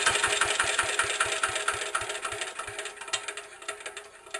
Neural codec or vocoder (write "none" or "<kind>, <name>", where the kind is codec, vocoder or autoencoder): none